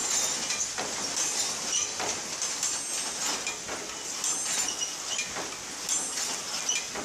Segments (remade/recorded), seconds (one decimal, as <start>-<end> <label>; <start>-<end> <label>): 0.0-7.0 recorded